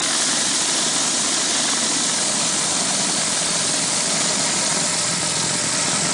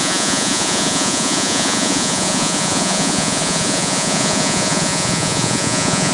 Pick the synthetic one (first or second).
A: second